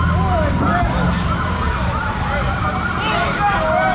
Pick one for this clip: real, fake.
real